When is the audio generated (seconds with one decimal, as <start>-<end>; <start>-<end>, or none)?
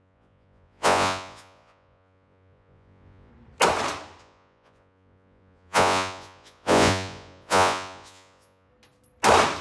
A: 0.0-3.3; 4.2-8.7